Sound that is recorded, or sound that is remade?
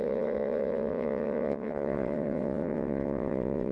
remade